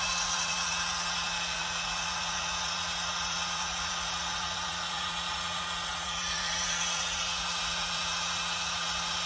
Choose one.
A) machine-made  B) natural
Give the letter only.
A